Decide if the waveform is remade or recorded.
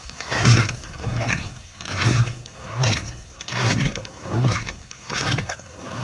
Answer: remade